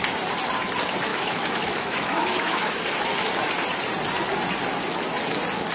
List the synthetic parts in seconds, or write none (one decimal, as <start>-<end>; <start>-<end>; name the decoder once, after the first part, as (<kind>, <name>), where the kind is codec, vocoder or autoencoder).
1.1-2.7 (autoencoder, DAC-VAE)